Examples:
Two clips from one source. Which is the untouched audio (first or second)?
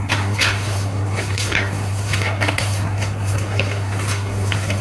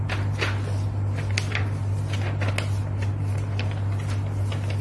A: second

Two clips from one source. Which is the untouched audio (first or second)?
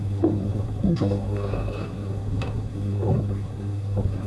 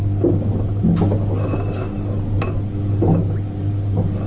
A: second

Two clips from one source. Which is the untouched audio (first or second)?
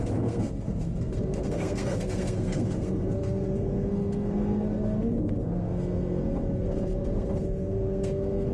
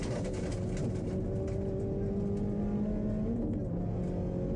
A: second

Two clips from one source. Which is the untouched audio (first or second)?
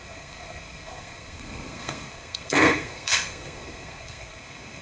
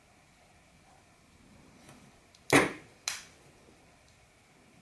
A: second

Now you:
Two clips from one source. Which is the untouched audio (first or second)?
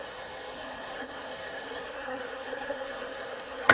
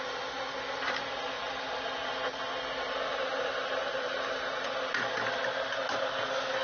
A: second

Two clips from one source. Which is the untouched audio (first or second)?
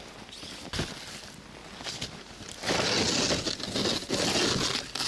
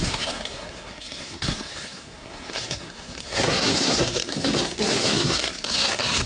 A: first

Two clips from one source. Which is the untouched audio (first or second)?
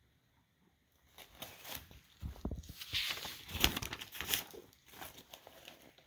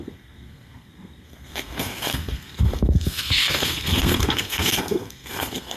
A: first